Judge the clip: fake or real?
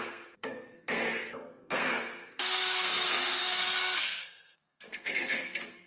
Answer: fake